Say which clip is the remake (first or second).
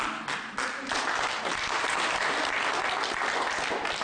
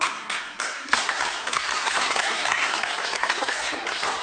second